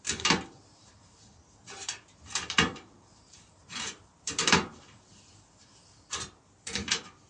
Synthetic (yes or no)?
yes